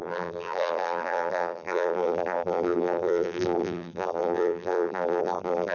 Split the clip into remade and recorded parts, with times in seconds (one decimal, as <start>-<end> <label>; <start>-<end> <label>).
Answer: 0.0-5.7 remade